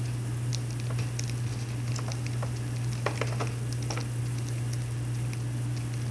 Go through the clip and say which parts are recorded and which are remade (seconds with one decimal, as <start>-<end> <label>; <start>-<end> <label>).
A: 0.0-6.1 recorded